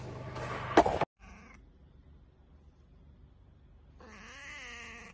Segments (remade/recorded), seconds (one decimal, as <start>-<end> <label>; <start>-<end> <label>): 0.0-5.1 recorded